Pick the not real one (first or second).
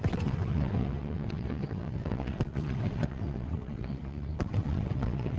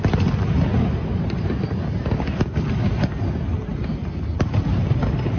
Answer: first